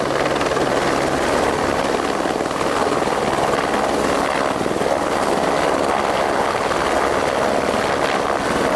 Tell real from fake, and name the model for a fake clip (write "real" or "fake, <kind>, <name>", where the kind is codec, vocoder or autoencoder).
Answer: real